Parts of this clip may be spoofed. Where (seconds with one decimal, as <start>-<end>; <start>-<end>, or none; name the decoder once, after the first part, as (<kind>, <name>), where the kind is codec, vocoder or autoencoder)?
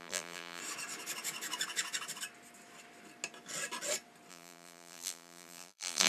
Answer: 0.0-0.6 (vocoder, BigVGAN v2); 4.3-6.1